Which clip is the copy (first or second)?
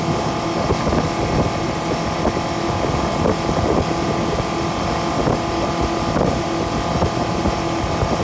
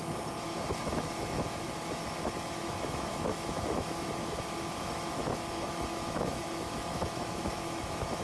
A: second